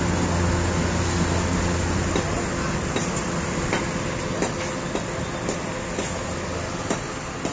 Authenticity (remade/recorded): recorded